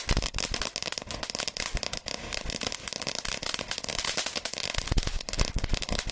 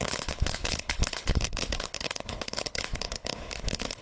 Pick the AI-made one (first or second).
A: second